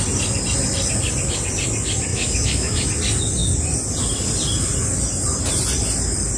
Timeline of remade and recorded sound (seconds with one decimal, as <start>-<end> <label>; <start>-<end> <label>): 0.0-2.1 recorded; 2.1-2.9 remade; 2.9-6.4 recorded